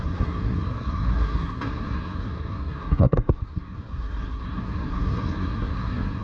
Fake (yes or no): yes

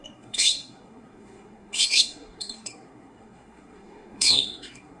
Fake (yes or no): yes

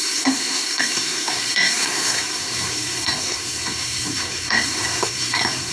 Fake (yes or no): yes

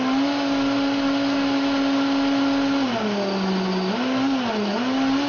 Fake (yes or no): no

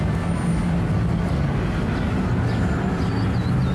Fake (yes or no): no